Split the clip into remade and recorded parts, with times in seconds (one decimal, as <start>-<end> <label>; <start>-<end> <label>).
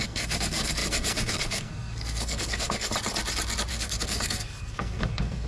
0.0-2.9 remade; 2.9-3.7 recorded; 3.7-5.5 remade